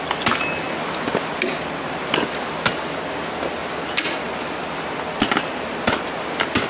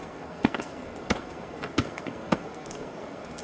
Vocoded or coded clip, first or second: second